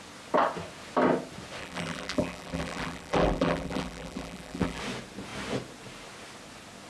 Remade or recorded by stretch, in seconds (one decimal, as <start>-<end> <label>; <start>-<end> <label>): 0.0-1.6 recorded; 1.6-4.8 remade; 4.8-6.9 recorded